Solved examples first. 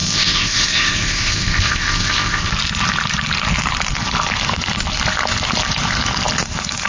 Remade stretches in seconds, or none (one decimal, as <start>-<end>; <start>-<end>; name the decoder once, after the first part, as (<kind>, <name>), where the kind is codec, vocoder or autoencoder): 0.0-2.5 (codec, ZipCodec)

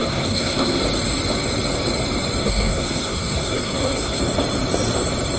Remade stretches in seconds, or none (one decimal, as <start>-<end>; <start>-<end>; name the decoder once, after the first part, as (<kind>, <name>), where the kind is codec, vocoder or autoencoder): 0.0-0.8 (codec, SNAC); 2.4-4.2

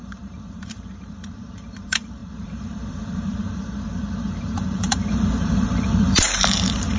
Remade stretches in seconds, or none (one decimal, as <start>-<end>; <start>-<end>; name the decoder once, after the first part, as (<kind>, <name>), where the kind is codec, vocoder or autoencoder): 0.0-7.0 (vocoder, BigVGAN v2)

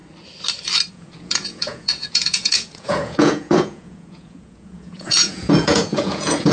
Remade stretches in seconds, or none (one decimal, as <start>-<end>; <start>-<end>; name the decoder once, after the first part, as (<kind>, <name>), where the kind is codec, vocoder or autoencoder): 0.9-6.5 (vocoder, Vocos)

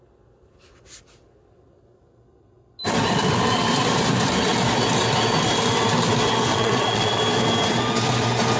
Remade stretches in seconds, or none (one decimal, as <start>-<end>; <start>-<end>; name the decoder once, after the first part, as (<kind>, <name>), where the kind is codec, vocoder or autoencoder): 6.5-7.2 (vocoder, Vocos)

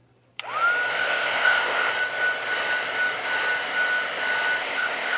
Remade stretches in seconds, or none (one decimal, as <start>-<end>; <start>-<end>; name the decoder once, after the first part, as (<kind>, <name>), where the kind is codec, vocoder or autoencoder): 0.9-1.9 (codec, ZipCodec); 4.6-5.2